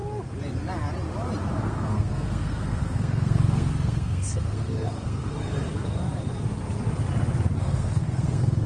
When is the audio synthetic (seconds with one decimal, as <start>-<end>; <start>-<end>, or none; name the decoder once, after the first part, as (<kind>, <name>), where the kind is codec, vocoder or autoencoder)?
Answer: 1.5-5.3 (codec, SNAC); 7.6-8.7